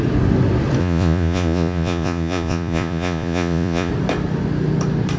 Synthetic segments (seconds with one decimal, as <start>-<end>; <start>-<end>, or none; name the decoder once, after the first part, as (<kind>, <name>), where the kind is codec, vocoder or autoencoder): 0.8-3.9 (vocoder, Vocos)